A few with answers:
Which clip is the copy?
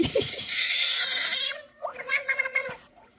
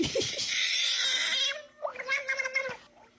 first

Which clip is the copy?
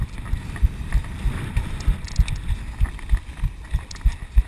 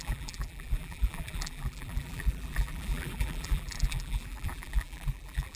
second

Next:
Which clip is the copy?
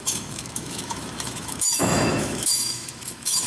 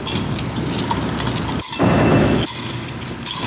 first